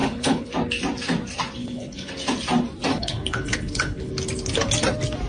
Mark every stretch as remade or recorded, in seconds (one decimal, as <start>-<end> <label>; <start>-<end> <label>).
0.0-0.5 remade; 0.5-1.6 recorded; 1.6-2.1 remade; 2.1-2.9 recorded; 2.9-4.1 remade; 4.1-5.3 recorded

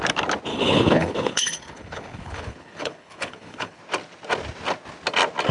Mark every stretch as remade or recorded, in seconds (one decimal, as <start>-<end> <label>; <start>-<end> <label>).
0.0-0.5 recorded; 0.5-3.8 remade; 3.8-5.5 recorded

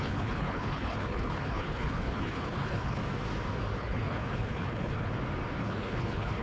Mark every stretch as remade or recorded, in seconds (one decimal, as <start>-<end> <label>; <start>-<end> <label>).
0.0-3.0 remade; 3.0-3.8 recorded; 3.8-5.1 remade; 5.1-5.6 recorded; 5.6-6.4 remade

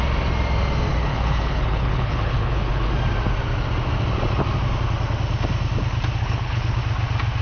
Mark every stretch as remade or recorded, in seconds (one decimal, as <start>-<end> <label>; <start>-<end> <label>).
0.0-0.9 recorded; 0.9-2.9 remade; 2.9-6.2 recorded; 6.2-6.8 remade; 6.8-7.4 recorded

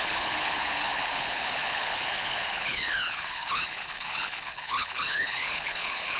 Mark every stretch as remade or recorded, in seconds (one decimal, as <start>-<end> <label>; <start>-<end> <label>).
0.0-6.2 remade